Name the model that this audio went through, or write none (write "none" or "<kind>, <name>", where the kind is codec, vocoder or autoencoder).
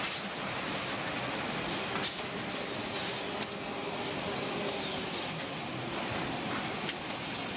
none